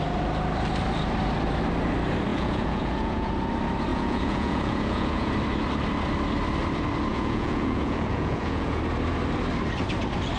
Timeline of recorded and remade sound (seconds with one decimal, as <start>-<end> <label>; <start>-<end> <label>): 0.0-2.3 recorded; 2.3-3.3 remade; 3.3-3.9 recorded; 3.9-5.3 remade; 5.3-7.1 recorded; 7.1-8.8 remade; 8.8-10.4 recorded